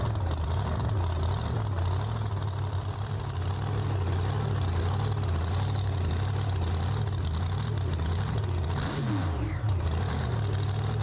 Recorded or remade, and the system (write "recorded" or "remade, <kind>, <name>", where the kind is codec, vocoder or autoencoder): recorded